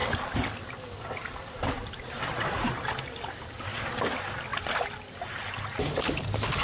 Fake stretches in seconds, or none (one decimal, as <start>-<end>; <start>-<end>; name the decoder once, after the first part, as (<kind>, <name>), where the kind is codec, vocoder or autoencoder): none

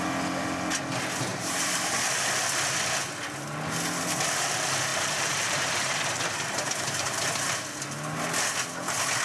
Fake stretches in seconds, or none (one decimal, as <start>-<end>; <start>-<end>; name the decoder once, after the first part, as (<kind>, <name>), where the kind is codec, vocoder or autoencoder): 1.3-1.9 (vocoder, BigVGAN v2); 4.9-7.5

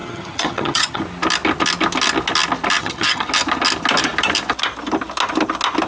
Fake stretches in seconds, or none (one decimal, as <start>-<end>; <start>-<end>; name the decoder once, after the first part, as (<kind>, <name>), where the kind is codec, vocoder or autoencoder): 0.0-1.0 (vocoder, HiFi-GAN); 2.8-3.3

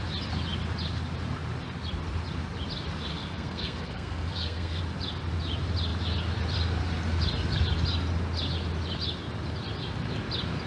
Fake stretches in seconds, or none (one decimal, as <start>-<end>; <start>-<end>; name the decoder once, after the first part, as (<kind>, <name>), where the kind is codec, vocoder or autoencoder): 3.1-4.8 (codec, SNAC)

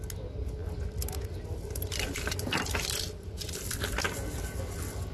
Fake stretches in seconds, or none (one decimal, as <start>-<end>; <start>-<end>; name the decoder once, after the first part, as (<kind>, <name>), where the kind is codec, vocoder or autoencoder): none

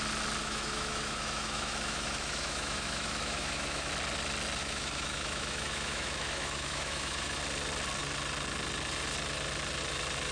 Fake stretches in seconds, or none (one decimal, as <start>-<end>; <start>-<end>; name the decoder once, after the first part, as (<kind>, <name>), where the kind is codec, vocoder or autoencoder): 0.4-3.9 (autoencoder, DAC-VAE); 4.6-7.4

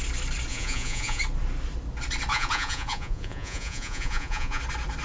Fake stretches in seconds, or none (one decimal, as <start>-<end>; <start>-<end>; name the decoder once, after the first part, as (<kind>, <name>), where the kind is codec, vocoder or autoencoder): 0.5-1.2 (vocoder, Vocos); 2.3-4.6

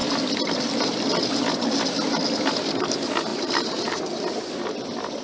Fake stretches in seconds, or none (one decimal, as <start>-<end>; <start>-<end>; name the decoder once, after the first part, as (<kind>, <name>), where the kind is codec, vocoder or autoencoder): 3.3-4.0 (vocoder, BigVGAN v2)